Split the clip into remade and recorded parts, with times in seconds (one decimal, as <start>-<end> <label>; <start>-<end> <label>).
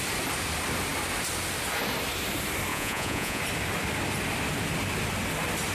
0.0-2.7 recorded; 2.7-3.4 remade; 3.4-5.7 recorded